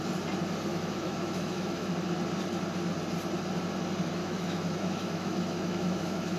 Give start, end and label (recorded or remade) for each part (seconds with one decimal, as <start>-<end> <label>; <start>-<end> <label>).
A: 0.0-0.7 recorded; 0.7-1.9 remade; 1.9-4.2 recorded; 4.2-6.4 remade